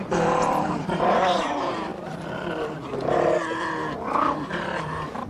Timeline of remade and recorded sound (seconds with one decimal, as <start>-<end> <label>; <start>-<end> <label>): 0.0-1.9 remade; 1.9-5.3 recorded